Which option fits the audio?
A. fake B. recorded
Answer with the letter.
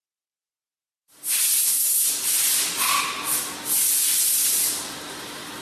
B